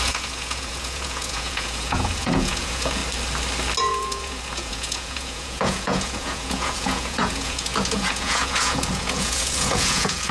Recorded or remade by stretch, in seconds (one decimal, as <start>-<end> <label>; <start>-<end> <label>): 0.0-3.0 remade; 3.0-3.8 recorded; 3.8-10.3 remade